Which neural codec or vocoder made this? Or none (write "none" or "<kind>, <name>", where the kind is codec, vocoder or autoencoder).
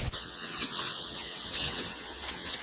vocoder, WaveNeXt